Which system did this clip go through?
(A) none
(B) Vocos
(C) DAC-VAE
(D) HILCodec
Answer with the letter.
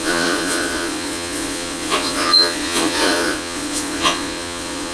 B